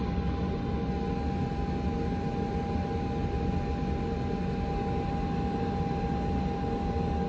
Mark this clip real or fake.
real